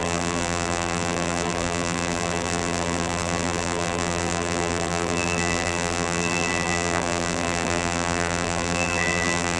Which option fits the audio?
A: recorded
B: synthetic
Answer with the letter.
B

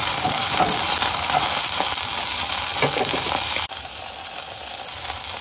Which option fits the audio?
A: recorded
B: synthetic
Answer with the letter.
A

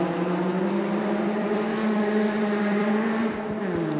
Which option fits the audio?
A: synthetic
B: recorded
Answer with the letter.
A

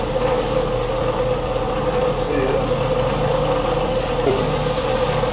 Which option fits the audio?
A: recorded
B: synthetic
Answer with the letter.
B